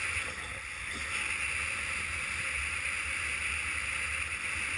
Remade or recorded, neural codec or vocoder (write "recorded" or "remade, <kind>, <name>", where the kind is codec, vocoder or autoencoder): recorded